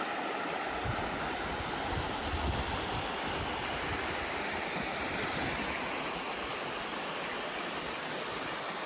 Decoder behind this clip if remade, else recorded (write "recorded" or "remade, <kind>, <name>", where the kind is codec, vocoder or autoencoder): recorded